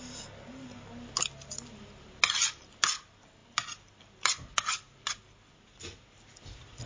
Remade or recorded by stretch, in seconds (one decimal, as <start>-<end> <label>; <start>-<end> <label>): 0.0-6.9 recorded

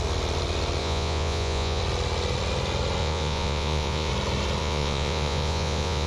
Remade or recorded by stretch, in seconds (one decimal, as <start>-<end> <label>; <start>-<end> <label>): 0.0-0.8 recorded; 0.8-1.8 remade; 1.8-3.0 recorded; 3.0-4.1 remade; 4.1-4.6 recorded; 4.6-6.1 remade